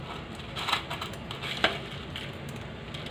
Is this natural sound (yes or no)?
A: yes